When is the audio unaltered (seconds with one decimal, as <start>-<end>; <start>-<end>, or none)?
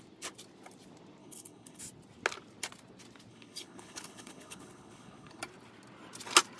0.0-1.2; 1.8-3.3; 5.4-6.6